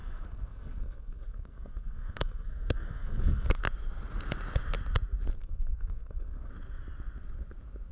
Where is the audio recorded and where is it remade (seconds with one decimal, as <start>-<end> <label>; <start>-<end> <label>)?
0.0-3.6 remade; 3.6-5.4 recorded; 5.4-6.5 remade; 6.5-7.9 recorded